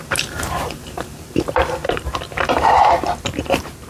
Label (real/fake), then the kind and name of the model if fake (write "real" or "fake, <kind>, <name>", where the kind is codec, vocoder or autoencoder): fake, vocoder, BigVGAN v2